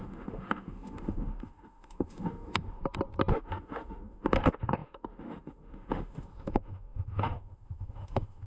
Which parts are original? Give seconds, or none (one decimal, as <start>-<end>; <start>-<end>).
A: 2.8-3.3